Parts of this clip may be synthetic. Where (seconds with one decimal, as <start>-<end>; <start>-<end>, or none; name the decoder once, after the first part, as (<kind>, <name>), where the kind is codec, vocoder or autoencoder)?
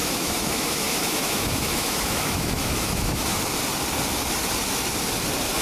0.0-3.4 (autoencoder, DAC-VAE)